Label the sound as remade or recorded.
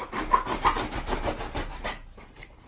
recorded